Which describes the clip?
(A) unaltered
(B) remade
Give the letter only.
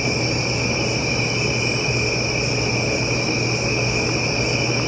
A